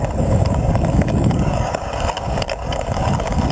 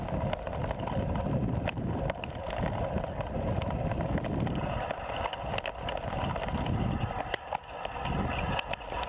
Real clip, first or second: second